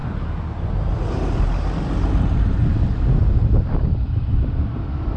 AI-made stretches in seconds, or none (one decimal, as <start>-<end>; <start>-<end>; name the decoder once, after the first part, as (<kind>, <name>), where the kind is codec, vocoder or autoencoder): none